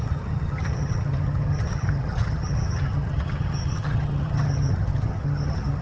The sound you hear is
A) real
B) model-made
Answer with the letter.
B